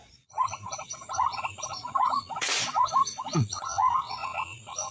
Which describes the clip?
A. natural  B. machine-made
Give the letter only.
B